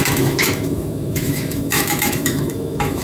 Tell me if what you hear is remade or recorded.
remade